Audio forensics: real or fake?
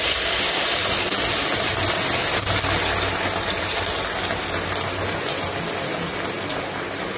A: real